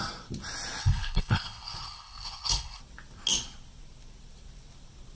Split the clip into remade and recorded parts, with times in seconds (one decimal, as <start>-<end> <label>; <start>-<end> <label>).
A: 0.0-0.8 recorded; 0.8-2.8 remade; 2.8-5.2 recorded